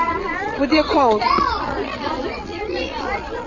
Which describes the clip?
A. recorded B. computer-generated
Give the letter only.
B